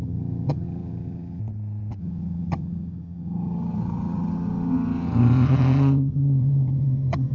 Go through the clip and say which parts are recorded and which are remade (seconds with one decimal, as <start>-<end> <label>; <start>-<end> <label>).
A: 0.0-1.4 remade; 1.4-2.0 recorded; 2.0-7.3 remade